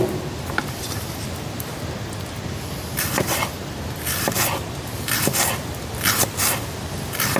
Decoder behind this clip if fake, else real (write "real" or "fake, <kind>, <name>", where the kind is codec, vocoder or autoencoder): real